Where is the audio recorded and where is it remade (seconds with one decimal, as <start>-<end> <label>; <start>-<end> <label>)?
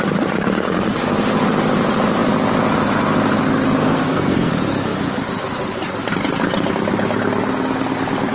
0.0-3.8 recorded; 3.8-4.5 remade; 4.5-8.3 recorded